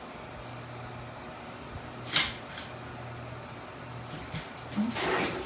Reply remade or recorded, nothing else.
recorded